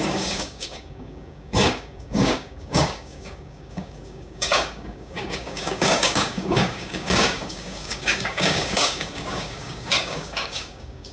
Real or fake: fake